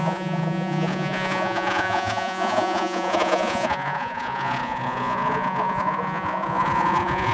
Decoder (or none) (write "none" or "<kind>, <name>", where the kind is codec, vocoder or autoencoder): vocoder, Vocos